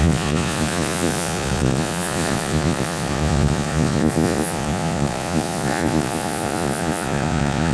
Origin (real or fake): fake